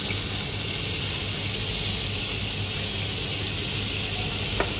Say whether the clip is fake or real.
real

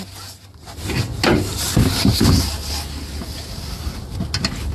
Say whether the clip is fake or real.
real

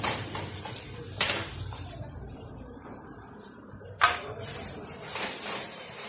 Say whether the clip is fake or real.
fake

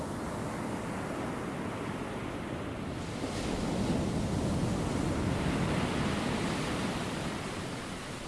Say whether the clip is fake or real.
real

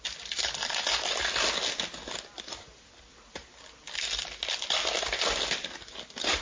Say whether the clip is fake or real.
real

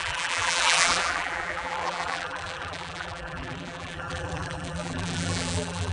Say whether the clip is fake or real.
fake